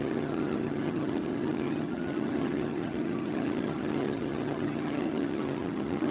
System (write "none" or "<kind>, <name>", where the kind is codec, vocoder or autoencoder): vocoder, HiFi-GAN